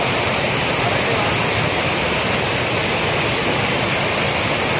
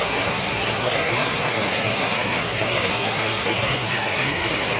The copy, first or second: second